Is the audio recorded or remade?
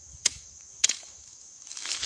remade